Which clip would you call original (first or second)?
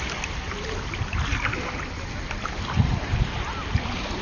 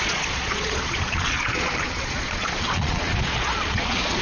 first